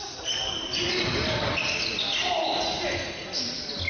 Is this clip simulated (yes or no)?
no